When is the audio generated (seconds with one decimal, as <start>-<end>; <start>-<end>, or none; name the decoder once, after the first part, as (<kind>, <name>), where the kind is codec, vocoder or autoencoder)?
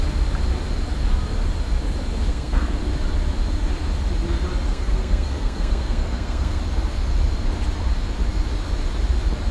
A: 2.3-2.8 (codec, SNAC); 4.7-6.6